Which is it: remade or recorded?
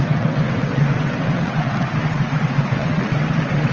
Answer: remade